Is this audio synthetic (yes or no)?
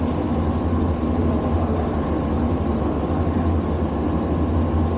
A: no